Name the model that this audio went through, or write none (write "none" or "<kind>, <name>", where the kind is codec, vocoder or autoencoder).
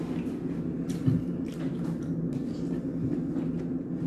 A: none